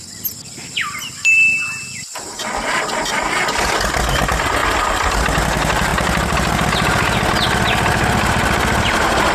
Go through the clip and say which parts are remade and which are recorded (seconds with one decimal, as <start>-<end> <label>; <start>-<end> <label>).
0.0-9.3 recorded